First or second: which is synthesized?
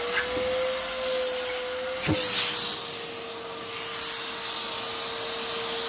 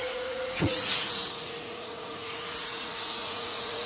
second